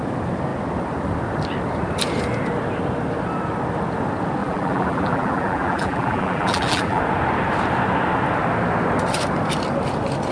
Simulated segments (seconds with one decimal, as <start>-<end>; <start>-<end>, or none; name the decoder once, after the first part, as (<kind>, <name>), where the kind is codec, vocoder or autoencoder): 4.4-7.0 (vocoder, BigVGAN v2)